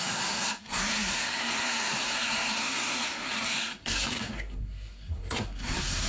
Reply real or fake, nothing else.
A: fake